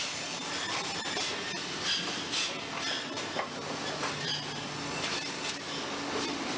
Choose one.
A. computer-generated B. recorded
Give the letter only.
B